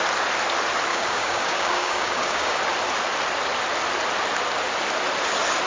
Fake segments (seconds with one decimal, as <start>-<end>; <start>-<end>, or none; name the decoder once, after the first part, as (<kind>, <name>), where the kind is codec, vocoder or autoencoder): 0.9-2.6 (codec, DAC)